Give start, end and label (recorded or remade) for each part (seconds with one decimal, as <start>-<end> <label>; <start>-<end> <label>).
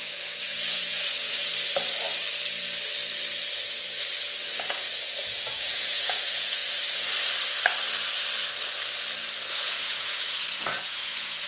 0.0-1.5 remade; 1.5-4.5 recorded; 4.5-6.6 remade; 6.6-9.5 recorded; 9.5-11.5 remade